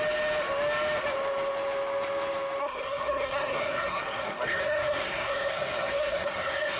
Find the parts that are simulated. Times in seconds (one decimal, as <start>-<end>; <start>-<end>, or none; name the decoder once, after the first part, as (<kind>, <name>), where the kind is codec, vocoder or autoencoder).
2.6-6.8 (codec, SNAC)